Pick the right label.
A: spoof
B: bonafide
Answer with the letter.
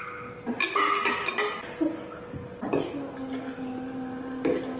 B